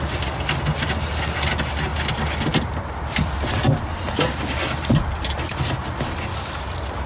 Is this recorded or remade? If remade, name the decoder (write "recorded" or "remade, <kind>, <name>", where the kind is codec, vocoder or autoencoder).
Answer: recorded